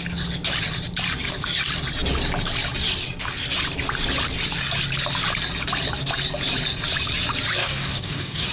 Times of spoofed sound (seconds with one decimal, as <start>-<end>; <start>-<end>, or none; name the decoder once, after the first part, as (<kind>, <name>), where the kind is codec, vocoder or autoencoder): 7.6-8.5 (codec, DAC)